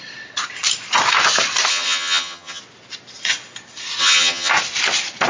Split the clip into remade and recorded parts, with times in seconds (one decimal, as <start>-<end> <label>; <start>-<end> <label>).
0.0-1.7 recorded; 1.7-2.6 remade; 2.6-4.0 recorded; 4.0-4.5 remade; 4.5-5.3 recorded